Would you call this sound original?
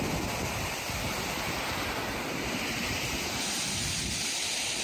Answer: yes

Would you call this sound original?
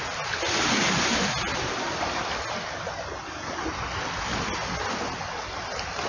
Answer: yes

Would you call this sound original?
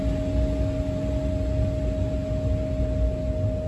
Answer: yes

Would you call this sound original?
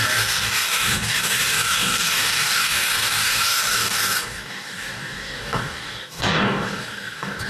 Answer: no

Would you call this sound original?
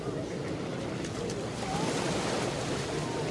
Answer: yes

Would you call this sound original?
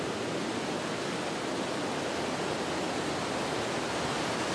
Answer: yes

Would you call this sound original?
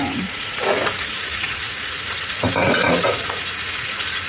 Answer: no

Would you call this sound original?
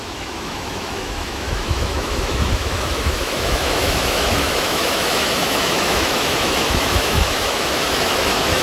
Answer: no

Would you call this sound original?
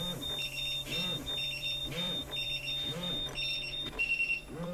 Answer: no